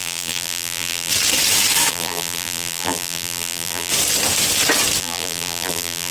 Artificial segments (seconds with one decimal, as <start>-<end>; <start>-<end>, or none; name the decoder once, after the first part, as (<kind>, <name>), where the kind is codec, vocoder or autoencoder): 0.0-1.1 (vocoder, BigVGAN v2); 1.9-3.9; 5.0-6.1